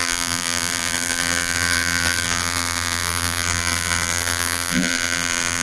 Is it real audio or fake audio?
fake